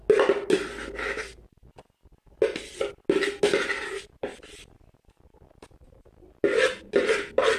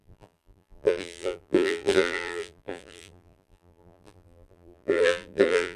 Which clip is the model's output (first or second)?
second